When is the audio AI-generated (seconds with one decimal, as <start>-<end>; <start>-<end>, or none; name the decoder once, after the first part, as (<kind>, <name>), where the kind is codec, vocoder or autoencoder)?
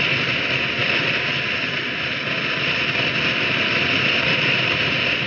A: none